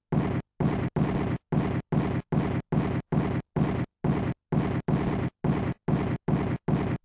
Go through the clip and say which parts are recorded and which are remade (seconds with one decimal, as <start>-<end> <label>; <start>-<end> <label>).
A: 0.0-7.0 recorded